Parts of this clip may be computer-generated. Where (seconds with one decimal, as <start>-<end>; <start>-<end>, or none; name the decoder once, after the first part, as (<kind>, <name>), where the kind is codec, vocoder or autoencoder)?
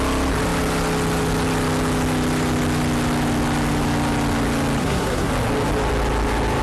4.8-5.3 (codec, SNAC)